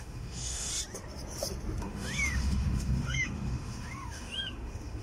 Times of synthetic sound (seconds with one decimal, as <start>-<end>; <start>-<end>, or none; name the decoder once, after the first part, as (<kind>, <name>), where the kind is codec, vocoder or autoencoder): 0.0-0.7 (autoencoder, DAC-VAE); 1.8-5.0